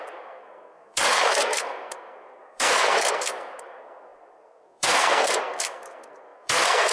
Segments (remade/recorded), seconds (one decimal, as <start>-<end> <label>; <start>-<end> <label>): 0.0-6.9 remade

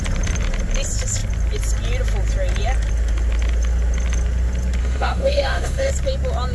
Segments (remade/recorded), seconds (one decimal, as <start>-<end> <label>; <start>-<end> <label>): 0.0-4.8 recorded; 4.8-5.9 remade; 5.9-6.5 recorded

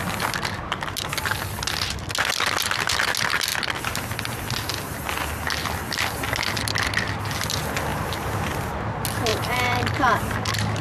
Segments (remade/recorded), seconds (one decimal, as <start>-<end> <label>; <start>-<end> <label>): 0.0-7.9 recorded; 7.9-8.8 remade; 8.8-9.3 recorded; 9.3-10.2 remade; 10.2-10.8 recorded

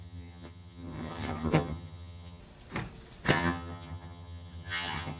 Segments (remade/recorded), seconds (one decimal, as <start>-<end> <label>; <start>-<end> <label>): 0.0-2.4 remade; 2.4-3.3 recorded; 3.3-5.2 remade

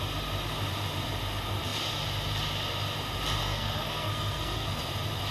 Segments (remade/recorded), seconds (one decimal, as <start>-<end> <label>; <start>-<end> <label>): 0.0-3.4 recorded; 3.4-4.8 remade; 4.8-5.3 recorded

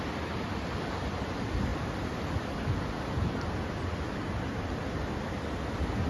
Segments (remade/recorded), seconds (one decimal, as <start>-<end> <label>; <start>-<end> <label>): 0.0-6.1 recorded